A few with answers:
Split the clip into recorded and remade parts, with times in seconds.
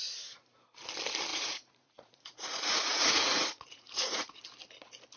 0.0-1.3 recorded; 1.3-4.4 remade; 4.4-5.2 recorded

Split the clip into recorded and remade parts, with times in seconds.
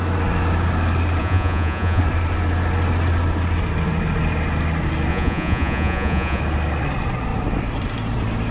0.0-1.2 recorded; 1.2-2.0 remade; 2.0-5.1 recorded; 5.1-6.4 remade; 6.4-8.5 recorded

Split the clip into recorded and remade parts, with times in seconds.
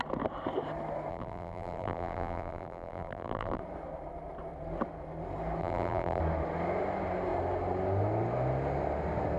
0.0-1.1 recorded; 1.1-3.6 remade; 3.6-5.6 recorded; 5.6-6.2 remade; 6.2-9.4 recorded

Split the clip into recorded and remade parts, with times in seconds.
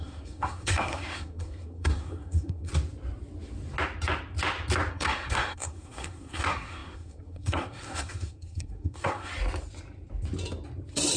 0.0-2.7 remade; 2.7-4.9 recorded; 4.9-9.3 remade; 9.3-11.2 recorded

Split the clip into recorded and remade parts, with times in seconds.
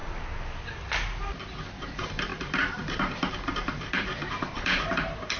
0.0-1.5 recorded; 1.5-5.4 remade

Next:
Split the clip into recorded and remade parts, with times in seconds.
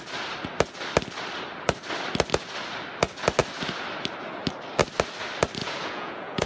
0.0-5.6 recorded; 5.6-6.5 remade